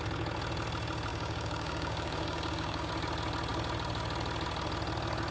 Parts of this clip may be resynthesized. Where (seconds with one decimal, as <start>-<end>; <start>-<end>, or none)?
1.1-2.9